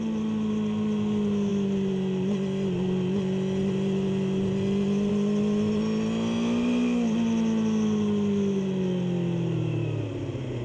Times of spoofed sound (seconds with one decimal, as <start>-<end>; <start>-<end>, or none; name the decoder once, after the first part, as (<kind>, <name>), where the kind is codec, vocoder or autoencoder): none